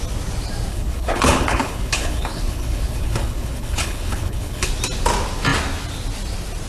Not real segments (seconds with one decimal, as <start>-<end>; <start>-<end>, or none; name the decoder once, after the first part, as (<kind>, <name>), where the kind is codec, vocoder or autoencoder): 0.7-4.7 (codec, HILCodec)